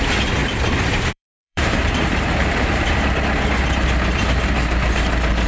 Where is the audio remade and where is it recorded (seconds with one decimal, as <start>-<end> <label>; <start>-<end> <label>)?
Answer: 0.0-0.4 recorded; 0.4-3.2 remade; 3.2-5.5 recorded